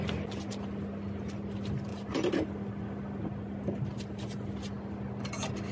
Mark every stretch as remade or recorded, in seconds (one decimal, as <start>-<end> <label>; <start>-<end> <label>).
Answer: 0.0-5.7 recorded